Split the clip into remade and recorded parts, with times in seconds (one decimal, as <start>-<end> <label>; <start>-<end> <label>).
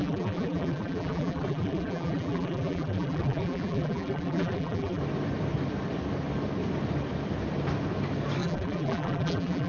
0.0-5.0 remade; 5.0-8.4 recorded; 8.4-9.7 remade